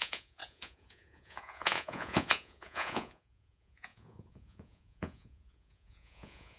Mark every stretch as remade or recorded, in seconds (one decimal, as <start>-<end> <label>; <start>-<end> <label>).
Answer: 0.0-6.6 remade